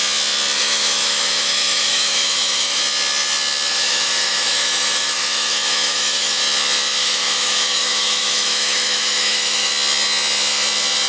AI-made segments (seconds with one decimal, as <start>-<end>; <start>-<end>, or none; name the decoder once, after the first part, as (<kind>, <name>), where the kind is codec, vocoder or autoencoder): 0.6-2.8 (autoencoder, DAC-VAE); 3.7-6.4; 7.0-9.7